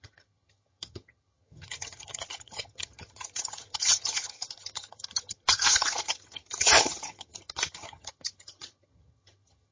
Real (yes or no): no